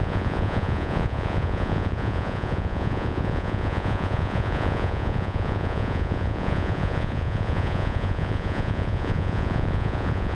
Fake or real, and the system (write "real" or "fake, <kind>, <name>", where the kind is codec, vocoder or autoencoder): fake, vocoder, Vocos